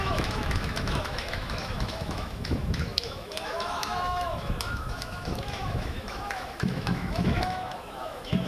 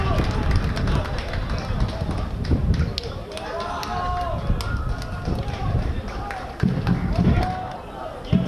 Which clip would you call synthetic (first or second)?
first